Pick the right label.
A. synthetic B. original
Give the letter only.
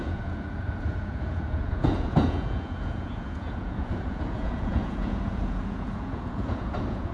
A